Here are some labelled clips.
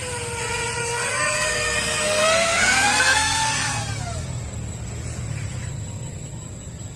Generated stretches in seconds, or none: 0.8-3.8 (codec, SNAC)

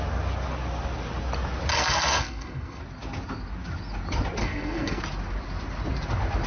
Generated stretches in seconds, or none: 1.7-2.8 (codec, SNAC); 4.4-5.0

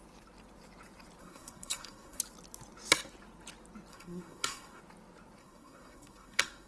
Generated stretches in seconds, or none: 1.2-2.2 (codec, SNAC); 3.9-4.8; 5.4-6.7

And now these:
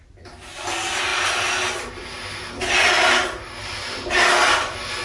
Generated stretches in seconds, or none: none